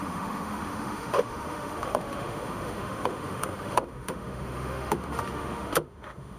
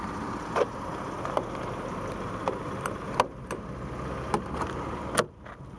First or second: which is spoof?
first